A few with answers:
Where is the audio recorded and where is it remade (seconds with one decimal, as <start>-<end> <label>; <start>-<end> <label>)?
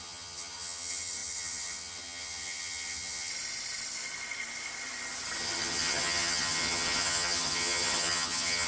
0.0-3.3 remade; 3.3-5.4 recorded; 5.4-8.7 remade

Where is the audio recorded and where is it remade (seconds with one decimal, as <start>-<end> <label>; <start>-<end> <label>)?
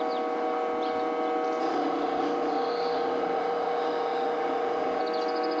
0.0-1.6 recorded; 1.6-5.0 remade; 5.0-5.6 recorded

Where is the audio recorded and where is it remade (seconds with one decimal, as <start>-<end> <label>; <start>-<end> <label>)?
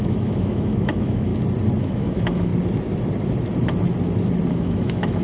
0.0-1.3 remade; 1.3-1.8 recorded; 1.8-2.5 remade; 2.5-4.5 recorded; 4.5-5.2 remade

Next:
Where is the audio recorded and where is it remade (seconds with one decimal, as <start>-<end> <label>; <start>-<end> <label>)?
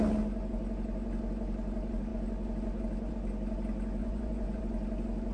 0.0-4.0 recorded; 4.0-4.6 remade; 4.6-5.3 recorded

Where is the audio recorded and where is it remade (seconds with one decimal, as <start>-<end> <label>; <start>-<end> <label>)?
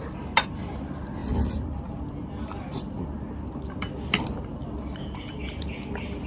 0.0-6.3 recorded